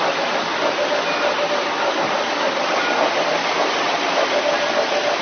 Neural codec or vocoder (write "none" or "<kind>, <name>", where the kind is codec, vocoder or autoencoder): none